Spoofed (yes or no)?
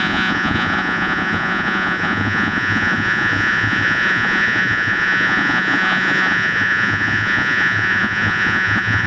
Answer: yes